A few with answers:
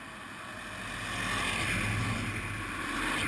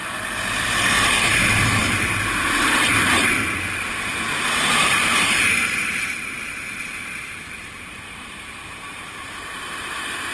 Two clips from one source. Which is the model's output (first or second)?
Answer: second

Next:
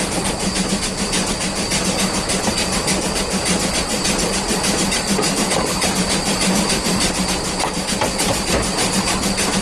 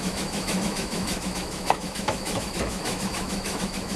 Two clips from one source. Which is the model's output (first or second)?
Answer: second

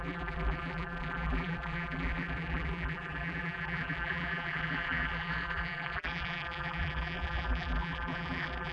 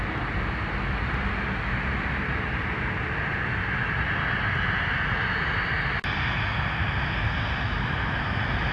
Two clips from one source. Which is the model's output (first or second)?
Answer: first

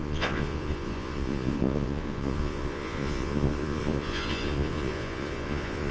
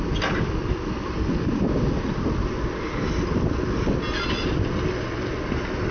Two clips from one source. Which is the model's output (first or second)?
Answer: first